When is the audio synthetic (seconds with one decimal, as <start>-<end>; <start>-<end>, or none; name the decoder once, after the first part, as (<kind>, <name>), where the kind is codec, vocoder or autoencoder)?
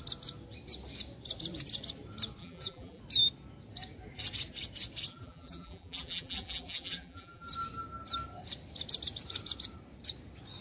2.4-3.0 (vocoder, BigVGAN v2); 5.1-7.5